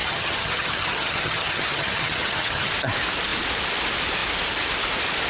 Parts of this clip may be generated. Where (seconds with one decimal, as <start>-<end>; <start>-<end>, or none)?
0.0-2.7